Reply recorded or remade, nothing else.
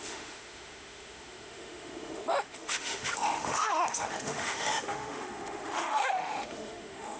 remade